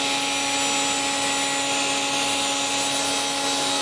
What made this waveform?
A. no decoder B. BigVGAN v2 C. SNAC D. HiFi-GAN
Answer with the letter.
A